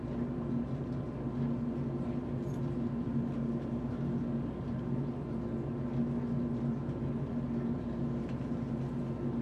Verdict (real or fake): real